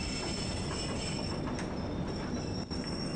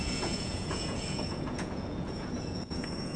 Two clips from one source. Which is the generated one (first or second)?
second